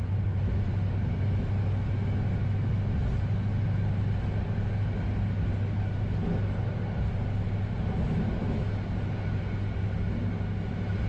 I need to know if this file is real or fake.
real